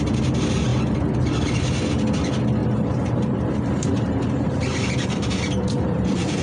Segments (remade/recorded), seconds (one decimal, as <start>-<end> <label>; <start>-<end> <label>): 0.0-2.6 recorded; 2.6-6.4 remade